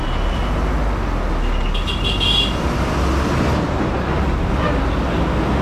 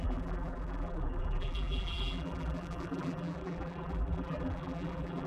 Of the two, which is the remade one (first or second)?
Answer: second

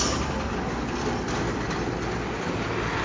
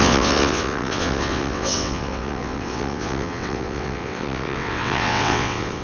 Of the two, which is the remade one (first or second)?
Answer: second